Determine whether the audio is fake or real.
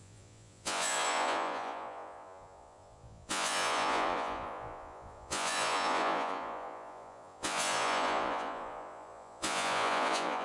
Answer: fake